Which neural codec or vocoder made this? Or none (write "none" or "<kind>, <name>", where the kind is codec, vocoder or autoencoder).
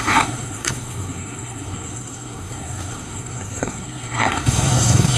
codec, SNAC